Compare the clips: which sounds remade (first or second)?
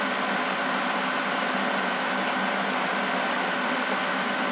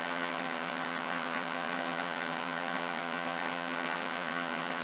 second